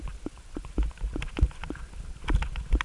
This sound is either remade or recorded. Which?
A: recorded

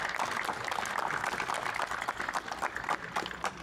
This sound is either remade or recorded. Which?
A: recorded